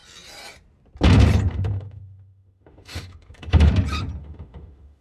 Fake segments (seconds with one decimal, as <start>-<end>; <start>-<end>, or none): 1.5-3.7; 4.2-5.0